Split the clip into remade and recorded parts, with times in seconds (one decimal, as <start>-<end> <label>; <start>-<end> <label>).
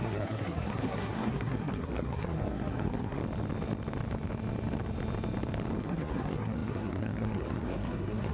0.0-3.2 remade; 3.2-5.8 recorded; 5.8-8.3 remade